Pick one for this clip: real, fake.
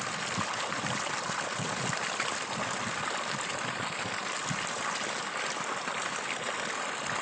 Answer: real